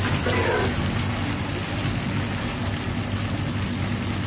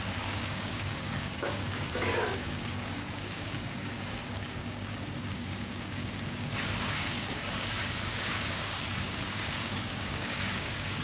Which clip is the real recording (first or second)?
first